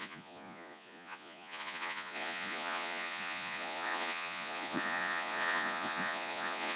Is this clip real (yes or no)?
no